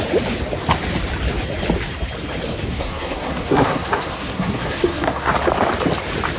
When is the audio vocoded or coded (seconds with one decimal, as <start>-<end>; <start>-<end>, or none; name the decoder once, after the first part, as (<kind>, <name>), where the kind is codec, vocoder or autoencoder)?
2.7-5.3 (codec, SNAC)